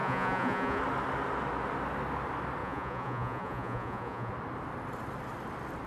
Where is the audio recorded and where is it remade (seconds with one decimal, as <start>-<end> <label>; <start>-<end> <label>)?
0.0-0.8 remade; 0.8-2.6 recorded; 2.6-4.3 remade; 4.3-5.9 recorded